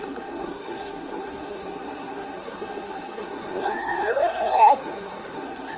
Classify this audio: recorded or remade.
remade